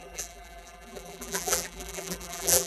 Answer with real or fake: fake